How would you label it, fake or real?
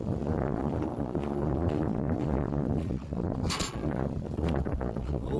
fake